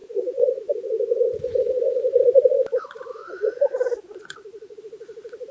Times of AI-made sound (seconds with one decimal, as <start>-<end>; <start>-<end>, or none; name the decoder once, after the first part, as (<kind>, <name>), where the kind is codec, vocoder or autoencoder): 0.0-2.2 (vocoder, Vocos); 3.2-4.8